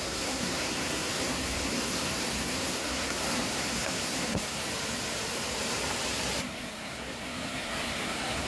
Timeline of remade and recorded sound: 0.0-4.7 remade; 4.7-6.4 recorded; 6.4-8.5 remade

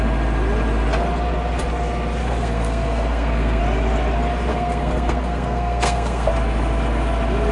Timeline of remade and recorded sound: 0.0-2.2 recorded; 2.2-3.6 remade; 3.6-4.5 recorded; 4.5-6.3 remade; 6.3-7.5 recorded

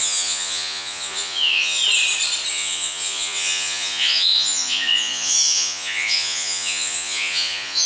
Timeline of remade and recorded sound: 0.0-1.8 remade; 1.8-2.5 recorded; 2.5-7.9 remade

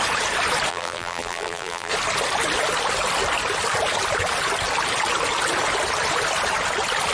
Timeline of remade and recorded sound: 0.0-0.7 recorded; 0.7-1.9 remade; 1.9-7.1 recorded

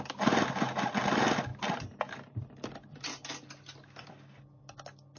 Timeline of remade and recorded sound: 0.0-5.2 recorded

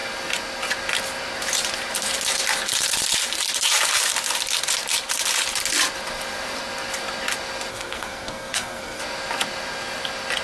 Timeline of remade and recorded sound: 0.0-7.7 recorded; 7.7-9.0 remade; 9.0-10.4 recorded